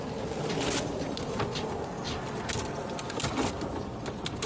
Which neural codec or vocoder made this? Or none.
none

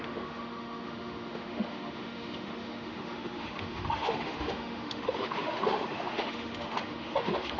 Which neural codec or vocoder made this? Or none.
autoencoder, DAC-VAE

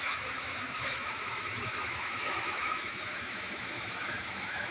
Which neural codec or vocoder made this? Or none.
autoencoder, DAC-VAE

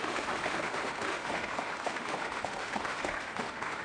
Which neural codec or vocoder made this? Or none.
autoencoder, DAC-VAE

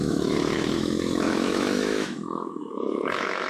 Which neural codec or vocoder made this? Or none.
autoencoder, DAC-VAE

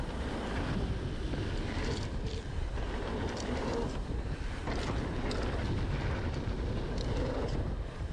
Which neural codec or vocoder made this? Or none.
none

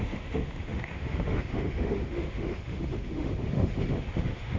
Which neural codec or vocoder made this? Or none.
autoencoder, DAC-VAE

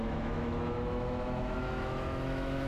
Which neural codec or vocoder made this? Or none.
autoencoder, DAC-VAE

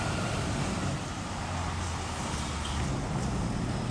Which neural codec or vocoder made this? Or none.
none